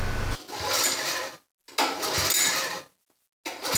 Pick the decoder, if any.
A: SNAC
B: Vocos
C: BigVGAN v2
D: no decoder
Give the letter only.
D